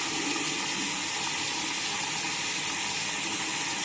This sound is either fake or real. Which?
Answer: real